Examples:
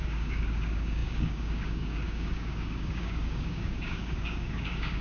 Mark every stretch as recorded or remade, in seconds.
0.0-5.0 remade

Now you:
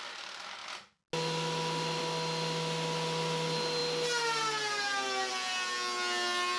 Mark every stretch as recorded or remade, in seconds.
0.0-6.6 recorded

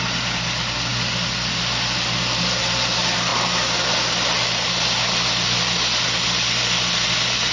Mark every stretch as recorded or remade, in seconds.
0.0-0.9 recorded; 0.9-2.6 remade; 2.6-7.5 recorded

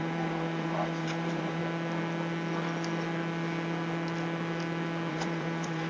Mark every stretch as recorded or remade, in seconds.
0.0-1.6 remade; 1.6-5.1 recorded; 5.1-5.9 remade

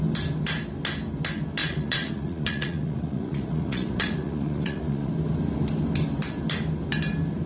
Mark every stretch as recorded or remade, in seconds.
0.0-1.6 recorded; 1.6-5.1 remade; 5.1-7.5 recorded

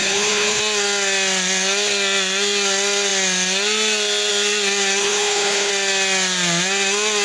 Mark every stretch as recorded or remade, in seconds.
0.0-0.6 remade; 0.6-5.0 recorded; 5.0-5.7 remade; 5.7-7.2 recorded